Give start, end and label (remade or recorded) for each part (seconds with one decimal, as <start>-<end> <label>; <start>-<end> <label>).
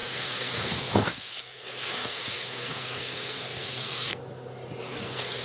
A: 0.0-4.2 remade; 4.2-4.8 recorded; 4.8-5.4 remade